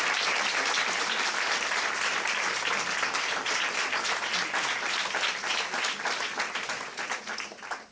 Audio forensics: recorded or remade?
recorded